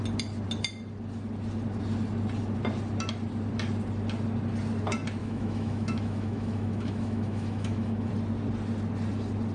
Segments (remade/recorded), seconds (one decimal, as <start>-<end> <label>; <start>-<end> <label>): 0.0-5.2 recorded; 5.2-8.1 remade; 8.1-9.5 recorded